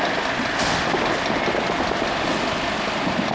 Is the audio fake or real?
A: real